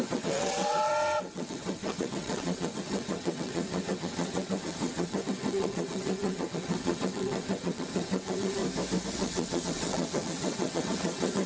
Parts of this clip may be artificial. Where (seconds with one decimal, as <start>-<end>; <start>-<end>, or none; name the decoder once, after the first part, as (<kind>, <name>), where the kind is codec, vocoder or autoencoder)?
0.0-8.6 (vocoder, WaveNeXt); 9.1-11.5